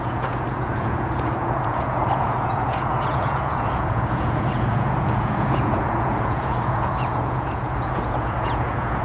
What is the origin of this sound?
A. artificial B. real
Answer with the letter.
A